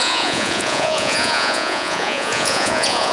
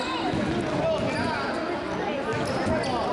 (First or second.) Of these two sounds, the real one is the second